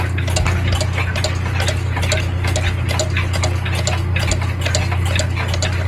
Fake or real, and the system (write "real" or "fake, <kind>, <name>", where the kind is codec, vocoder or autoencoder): real